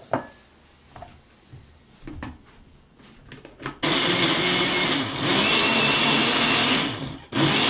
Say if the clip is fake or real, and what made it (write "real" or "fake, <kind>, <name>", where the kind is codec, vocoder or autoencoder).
real